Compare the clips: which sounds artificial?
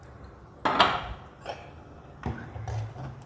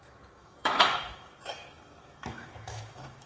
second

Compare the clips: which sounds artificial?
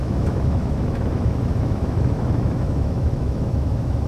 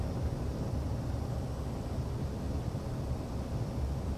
first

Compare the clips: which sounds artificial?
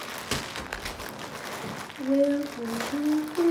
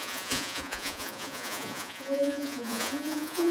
second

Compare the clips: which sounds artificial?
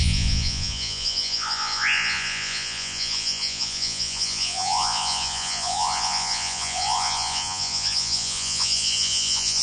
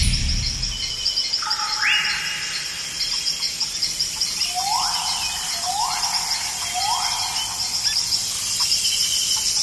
first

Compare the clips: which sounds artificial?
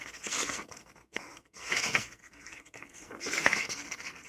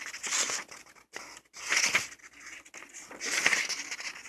first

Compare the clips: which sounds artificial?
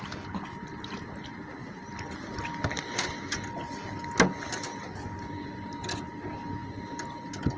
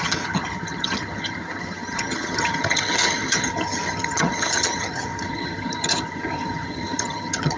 second